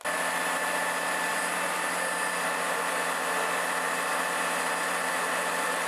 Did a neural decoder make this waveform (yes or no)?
no